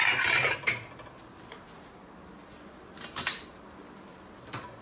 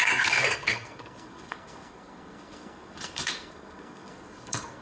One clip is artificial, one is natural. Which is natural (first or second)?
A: first